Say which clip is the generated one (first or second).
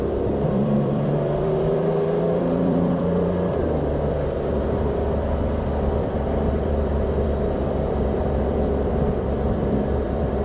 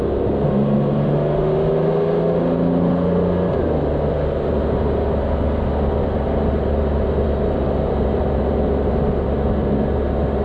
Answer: first